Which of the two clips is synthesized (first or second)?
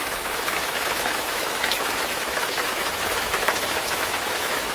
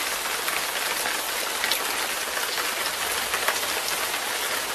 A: first